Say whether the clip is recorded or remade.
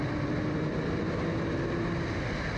recorded